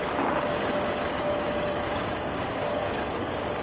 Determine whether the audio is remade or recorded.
remade